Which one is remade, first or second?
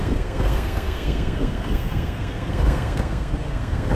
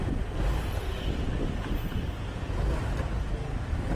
first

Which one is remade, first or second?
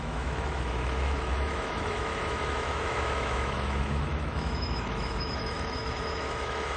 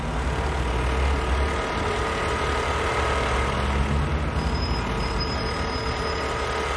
first